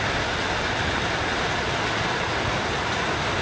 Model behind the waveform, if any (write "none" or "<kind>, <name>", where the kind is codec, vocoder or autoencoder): none